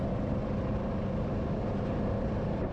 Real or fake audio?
real